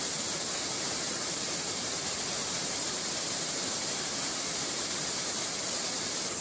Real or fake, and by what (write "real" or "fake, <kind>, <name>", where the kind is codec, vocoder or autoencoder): fake, vocoder, BigVGAN v2